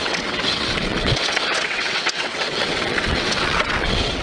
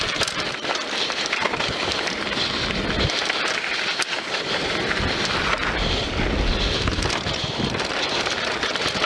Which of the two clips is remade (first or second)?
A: first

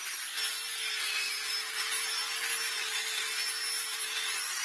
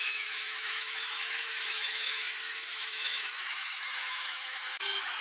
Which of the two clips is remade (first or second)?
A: second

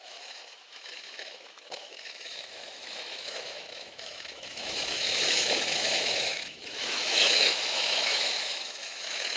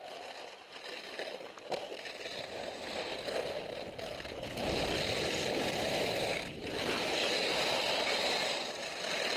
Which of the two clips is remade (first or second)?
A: first